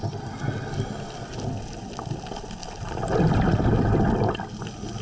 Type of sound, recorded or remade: recorded